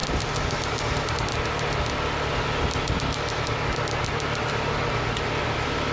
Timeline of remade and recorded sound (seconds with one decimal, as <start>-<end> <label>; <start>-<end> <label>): 0.0-5.9 recorded